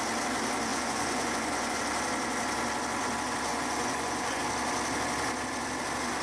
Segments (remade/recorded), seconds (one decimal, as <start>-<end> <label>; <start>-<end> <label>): 0.0-0.7 recorded; 0.7-1.8 remade; 1.8-3.5 recorded; 3.5-4.4 remade; 4.4-6.2 recorded